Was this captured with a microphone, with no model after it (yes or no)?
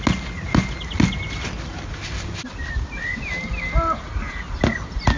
yes